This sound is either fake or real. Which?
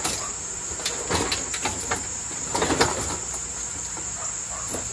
real